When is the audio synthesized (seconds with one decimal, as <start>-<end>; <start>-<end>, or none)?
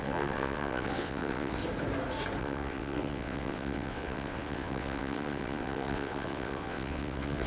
0.0-1.6; 2.4-7.5